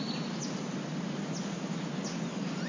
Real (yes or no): yes